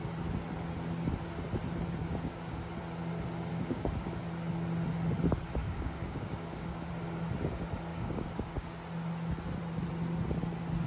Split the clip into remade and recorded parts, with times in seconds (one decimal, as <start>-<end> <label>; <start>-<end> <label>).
0.0-2.0 recorded; 2.0-2.7 remade; 2.7-3.5 recorded; 3.5-4.2 remade; 4.2-5.6 recorded; 5.6-6.9 remade; 6.9-7.9 recorded; 7.9-8.7 remade; 8.7-10.9 recorded